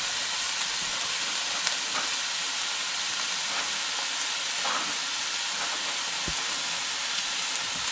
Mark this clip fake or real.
real